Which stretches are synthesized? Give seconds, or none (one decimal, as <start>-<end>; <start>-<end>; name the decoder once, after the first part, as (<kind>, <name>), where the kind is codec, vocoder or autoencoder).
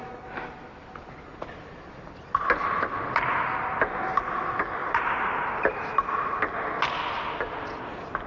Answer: 4.8-6.4 (vocoder, BigVGAN v2)